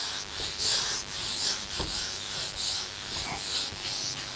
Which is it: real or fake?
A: real